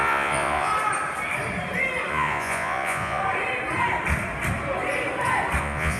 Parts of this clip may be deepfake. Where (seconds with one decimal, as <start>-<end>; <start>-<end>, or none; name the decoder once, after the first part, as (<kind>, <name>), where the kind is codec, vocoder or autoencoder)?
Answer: 0.0-0.7 (vocoder, Vocos); 2.1-3.2; 5.6-6.0